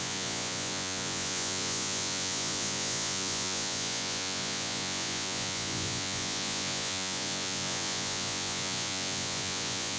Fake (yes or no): yes